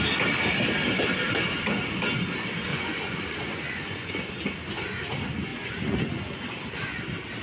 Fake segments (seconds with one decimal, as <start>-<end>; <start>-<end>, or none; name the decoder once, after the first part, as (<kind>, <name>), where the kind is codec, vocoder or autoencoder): 2.7-4.3 (vocoder, Vocos); 5.5-6.4